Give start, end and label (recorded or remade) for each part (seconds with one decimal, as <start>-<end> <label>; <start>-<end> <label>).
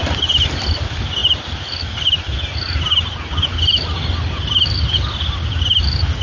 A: 0.0-6.2 recorded